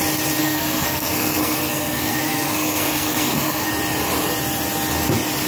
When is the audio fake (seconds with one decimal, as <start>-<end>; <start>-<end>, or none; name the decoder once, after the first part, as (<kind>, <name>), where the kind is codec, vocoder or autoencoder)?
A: 0.4-3.7 (codec, SNAC)